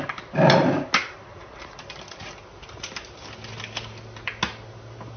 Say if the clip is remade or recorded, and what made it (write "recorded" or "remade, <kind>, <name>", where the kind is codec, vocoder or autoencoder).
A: recorded